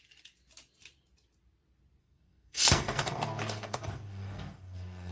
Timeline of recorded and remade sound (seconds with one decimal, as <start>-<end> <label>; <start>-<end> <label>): 0.0-2.0 recorded; 2.0-5.1 remade